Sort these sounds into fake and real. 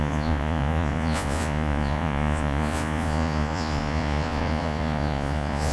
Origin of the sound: fake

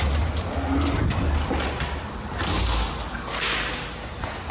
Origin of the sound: real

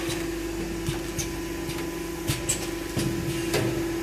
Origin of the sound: real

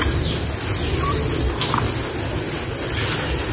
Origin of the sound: real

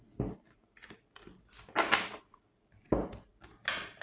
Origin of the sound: real